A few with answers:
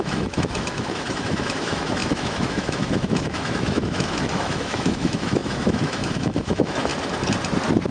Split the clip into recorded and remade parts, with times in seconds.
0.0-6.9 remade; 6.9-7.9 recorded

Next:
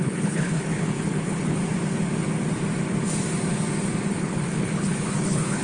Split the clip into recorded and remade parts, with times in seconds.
0.0-1.6 remade; 1.6-4.1 recorded; 4.1-5.6 remade

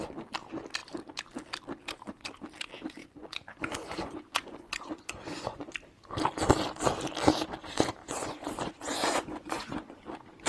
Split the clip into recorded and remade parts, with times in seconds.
0.0-3.0 recorded; 3.0-5.7 remade; 5.7-8.0 recorded; 8.0-10.0 remade; 10.0-10.5 recorded

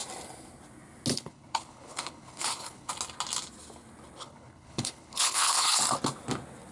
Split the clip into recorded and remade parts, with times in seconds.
0.0-1.1 recorded; 1.1-2.9 remade; 2.9-4.2 recorded; 4.2-5.8 remade; 5.8-6.7 recorded

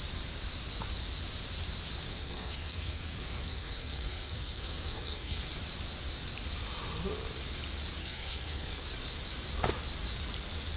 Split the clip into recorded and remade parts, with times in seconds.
0.0-2.1 recorded; 2.1-5.5 remade; 5.5-8.0 recorded; 8.0-8.8 remade; 8.8-10.8 recorded

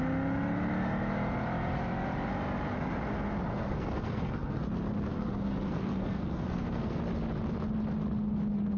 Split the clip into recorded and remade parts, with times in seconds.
0.0-3.5 recorded; 3.5-4.6 remade; 4.6-5.1 recorded; 5.1-7.0 remade; 7.0-8.8 recorded

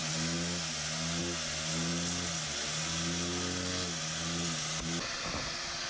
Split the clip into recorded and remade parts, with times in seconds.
0.0-5.9 recorded